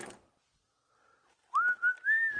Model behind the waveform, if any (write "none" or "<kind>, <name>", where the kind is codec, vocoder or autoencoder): none